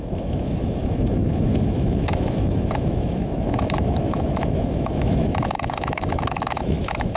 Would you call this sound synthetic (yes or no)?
yes